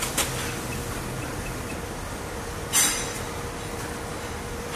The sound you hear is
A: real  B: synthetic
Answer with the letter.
A